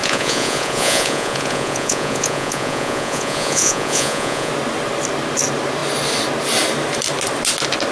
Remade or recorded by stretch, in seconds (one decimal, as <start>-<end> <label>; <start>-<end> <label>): 0.0-4.5 remade; 4.5-7.9 recorded